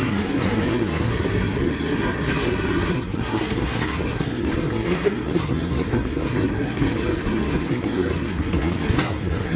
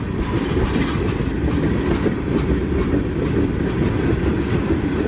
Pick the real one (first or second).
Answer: second